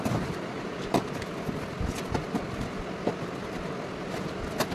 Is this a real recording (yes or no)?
yes